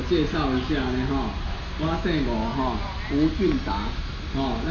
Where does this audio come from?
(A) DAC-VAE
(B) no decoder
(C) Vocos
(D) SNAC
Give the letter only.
B